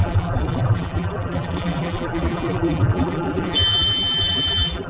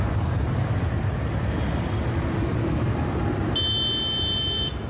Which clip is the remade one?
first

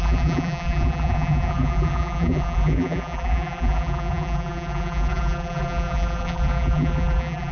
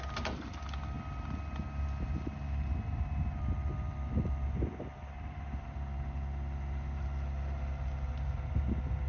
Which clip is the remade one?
first